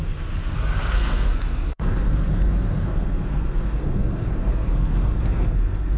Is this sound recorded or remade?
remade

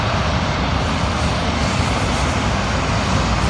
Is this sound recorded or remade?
recorded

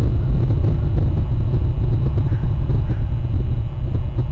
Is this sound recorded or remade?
recorded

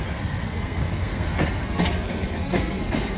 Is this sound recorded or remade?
remade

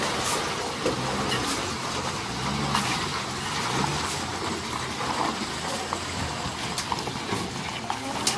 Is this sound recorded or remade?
recorded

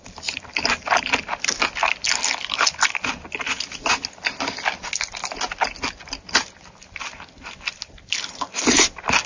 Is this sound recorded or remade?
recorded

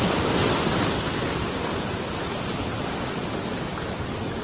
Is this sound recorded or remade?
recorded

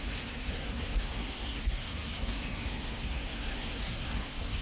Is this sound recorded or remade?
remade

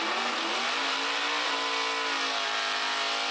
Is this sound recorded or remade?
recorded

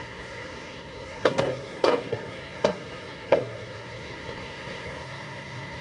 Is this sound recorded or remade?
remade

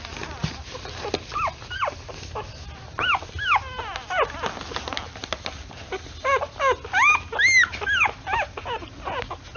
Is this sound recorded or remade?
recorded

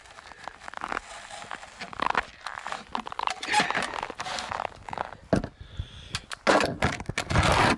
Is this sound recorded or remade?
recorded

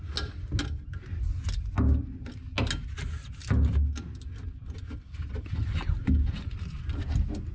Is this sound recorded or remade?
recorded